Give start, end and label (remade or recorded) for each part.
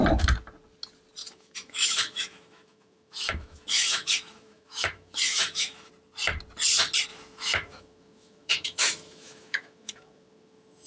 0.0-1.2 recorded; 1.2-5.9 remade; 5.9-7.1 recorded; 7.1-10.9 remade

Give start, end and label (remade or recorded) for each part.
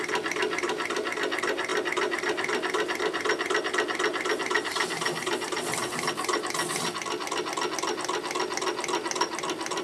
0.0-9.8 recorded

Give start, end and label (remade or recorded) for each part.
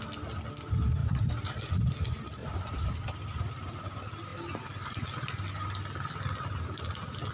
0.0-1.0 recorded; 1.0-1.7 remade; 1.7-2.4 recorded; 2.4-2.9 remade; 2.9-7.3 recorded